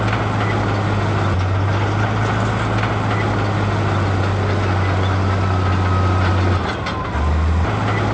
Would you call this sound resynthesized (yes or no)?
no